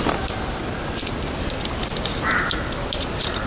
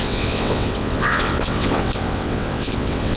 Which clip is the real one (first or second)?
first